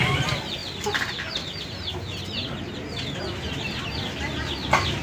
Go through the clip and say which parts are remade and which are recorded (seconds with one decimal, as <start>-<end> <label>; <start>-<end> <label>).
0.0-5.0 recorded